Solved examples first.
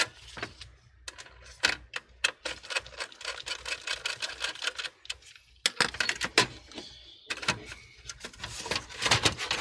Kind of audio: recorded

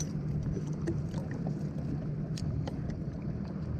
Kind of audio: remade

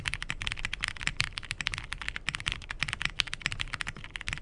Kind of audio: recorded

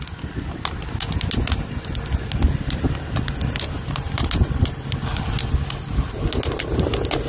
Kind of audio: recorded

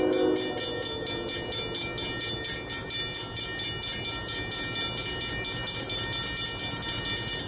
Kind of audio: recorded